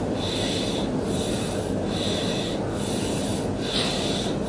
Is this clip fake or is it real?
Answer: real